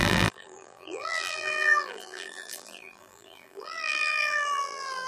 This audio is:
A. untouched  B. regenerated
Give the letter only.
B